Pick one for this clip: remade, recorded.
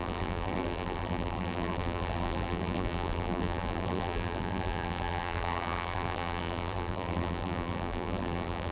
remade